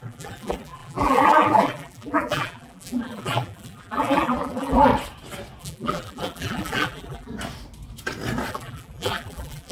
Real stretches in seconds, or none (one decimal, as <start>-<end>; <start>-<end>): 4.9-5.6; 7.3-8.5